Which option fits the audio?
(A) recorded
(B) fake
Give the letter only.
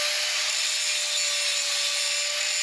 A